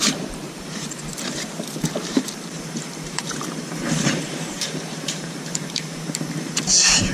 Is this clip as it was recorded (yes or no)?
no